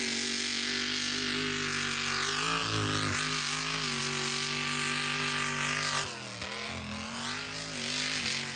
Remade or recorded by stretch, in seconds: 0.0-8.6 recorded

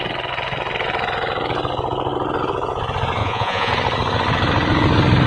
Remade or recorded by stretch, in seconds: 0.0-3.2 recorded; 3.2-3.7 remade; 3.7-5.3 recorded